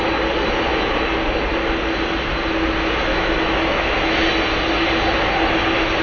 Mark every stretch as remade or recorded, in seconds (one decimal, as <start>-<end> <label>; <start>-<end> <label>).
0.0-3.1 recorded; 3.1-4.2 remade; 4.2-6.0 recorded